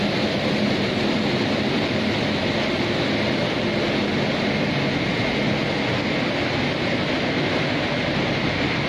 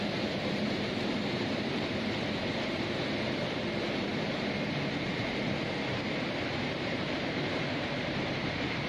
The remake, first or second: second